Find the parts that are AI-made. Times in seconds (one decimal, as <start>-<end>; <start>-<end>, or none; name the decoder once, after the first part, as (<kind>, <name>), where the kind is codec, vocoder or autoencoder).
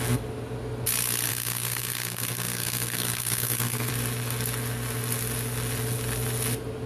1.3-3.9 (codec, SNAC)